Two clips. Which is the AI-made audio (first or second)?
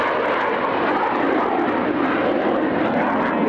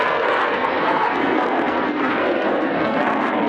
second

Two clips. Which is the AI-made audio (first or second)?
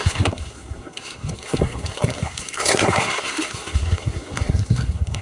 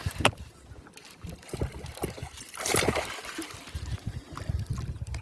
first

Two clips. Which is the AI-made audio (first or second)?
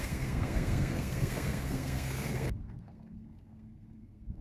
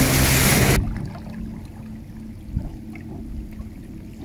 first